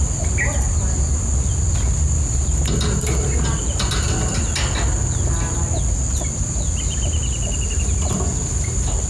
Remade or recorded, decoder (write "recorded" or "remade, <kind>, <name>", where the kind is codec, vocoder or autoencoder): recorded